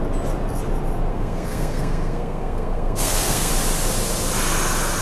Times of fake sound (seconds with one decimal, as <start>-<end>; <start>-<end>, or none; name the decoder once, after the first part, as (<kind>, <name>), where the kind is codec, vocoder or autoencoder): 1.1-3.5 (codec, SNAC)